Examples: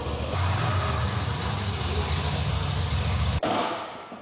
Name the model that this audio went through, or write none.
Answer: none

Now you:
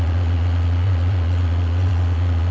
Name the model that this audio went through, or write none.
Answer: vocoder, Vocos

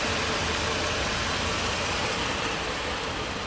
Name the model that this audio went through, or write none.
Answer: none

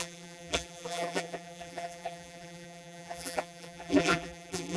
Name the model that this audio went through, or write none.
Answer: vocoder, BigVGAN v2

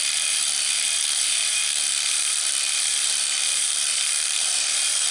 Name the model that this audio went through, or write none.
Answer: vocoder, BigVGAN v2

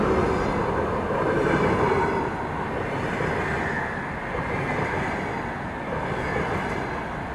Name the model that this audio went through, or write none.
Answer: none